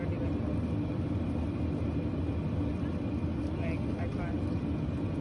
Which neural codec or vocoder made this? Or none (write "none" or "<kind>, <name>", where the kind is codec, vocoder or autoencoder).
none